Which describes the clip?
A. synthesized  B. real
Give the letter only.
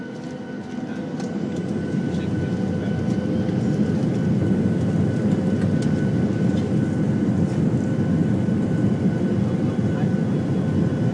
B